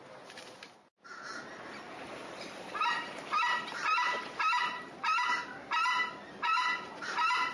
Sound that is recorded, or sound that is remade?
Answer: remade